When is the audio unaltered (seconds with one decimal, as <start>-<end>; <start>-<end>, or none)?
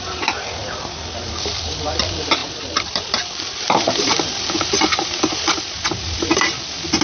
0.0-0.6; 1.7-2.4; 5.7-7.0